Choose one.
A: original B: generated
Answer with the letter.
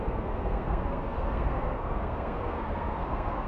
B